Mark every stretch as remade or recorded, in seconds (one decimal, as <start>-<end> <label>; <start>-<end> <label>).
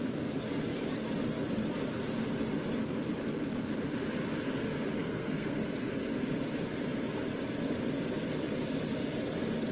0.0-5.0 recorded; 5.0-5.6 remade; 5.6-9.7 recorded